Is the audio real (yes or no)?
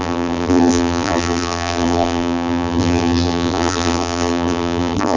no